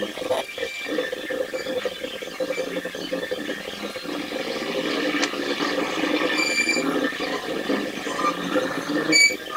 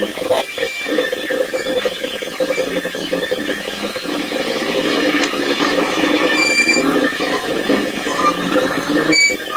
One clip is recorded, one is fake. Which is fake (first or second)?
second